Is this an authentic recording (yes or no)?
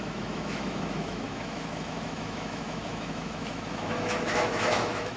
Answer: no